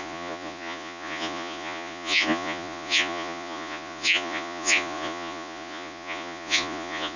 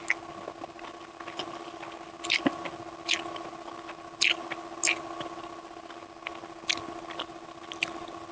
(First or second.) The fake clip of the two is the first